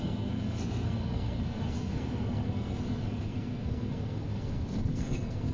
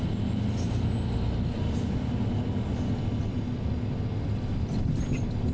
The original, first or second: second